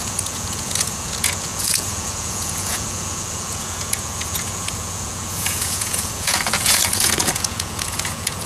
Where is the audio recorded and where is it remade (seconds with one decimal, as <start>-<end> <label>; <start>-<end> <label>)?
0.0-8.5 remade